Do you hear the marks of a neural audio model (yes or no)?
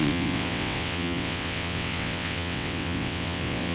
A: yes